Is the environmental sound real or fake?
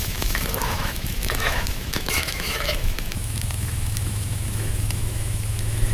fake